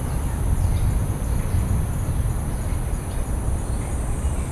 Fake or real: fake